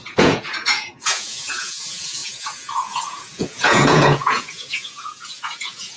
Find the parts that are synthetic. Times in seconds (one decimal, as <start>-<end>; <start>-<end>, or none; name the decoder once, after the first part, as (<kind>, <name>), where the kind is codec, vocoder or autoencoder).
0.0-6.0 (vocoder, Vocos)